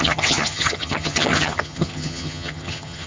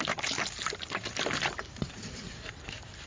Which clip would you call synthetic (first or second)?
first